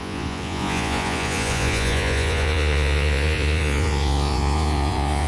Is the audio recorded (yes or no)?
no